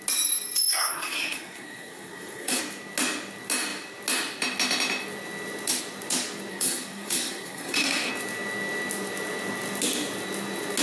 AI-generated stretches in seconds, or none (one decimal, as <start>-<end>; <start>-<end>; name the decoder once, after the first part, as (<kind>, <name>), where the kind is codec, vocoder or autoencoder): 0.7-2.6 (codec, SNAC); 6.5-8.1